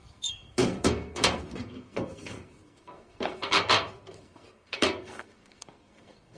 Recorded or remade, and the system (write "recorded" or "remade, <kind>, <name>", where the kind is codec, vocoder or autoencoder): remade, codec, SNAC